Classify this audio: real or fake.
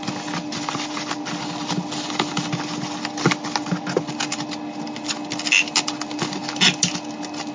real